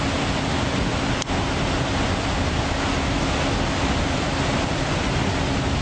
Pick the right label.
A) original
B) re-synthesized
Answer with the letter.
A